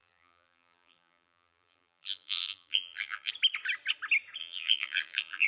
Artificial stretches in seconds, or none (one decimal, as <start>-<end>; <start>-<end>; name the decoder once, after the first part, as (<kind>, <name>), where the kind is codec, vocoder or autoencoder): 0.0-3.3 (vocoder, BigVGAN v2); 4.4-5.5